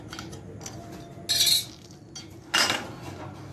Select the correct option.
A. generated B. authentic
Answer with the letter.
B